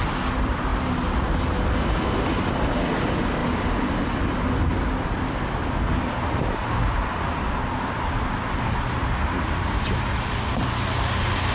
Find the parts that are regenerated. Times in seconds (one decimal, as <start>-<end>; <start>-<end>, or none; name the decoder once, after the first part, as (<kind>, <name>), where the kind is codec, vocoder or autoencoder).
none